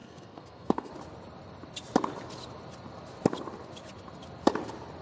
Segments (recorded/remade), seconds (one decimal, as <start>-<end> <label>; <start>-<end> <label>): 0.0-0.9 remade; 0.9-5.0 recorded

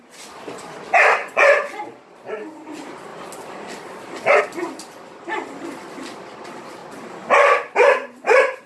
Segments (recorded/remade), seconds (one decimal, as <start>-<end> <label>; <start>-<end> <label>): 0.0-1.2 recorded; 1.2-1.8 remade; 1.8-8.7 recorded

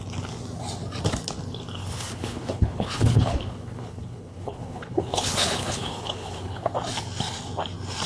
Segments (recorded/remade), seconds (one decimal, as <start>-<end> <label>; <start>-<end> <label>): 0.0-1.8 recorded; 1.8-6.7 remade; 6.7-8.1 recorded

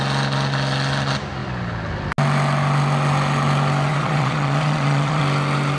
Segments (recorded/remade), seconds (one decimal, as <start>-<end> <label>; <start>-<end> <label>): 0.0-3.9 recorded; 3.9-5.2 remade; 5.2-5.8 recorded

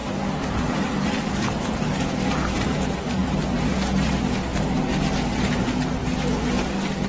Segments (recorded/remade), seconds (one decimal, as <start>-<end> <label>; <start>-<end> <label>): 0.0-3.2 recorded; 3.2-3.7 remade; 3.7-4.5 recorded; 4.5-5.6 remade; 5.6-7.1 recorded

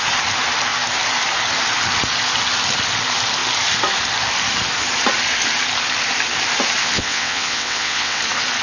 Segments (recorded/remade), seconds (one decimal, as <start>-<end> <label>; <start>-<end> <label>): 0.0-6.8 recorded; 6.8-8.2 remade; 8.2-8.6 recorded

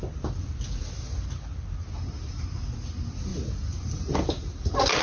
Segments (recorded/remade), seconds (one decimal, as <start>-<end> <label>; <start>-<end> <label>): 0.0-5.0 recorded

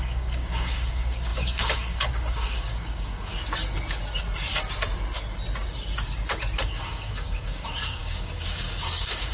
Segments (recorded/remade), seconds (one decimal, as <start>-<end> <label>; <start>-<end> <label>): 0.0-3.3 remade; 3.3-6.6 recorded; 6.6-9.3 remade